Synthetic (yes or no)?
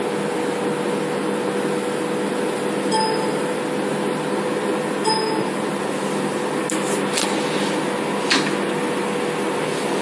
no